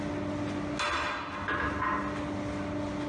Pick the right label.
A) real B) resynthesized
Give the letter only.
A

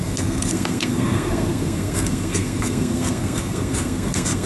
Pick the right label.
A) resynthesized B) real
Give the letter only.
A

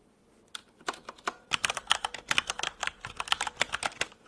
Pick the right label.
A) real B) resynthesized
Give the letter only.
A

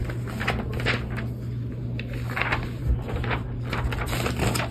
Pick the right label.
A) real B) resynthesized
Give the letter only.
A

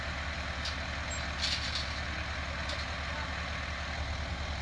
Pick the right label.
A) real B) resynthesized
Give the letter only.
A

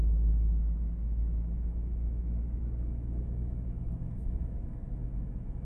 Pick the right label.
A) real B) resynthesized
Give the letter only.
B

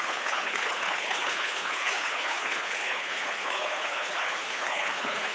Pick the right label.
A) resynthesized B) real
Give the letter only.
A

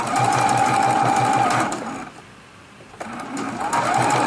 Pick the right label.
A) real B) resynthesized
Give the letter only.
A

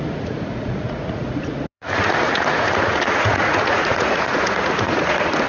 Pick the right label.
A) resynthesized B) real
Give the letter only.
A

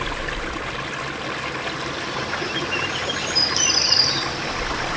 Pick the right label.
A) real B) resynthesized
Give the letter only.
A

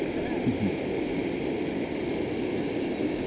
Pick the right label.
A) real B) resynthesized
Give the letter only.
A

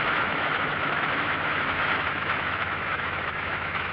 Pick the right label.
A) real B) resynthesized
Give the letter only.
B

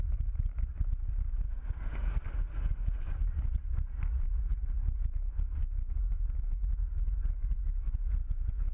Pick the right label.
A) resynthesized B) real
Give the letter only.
B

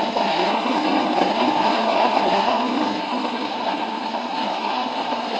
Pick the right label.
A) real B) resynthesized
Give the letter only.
B